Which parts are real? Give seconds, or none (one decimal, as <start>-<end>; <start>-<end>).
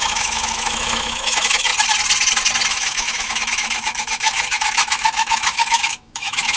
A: 1.7-2.7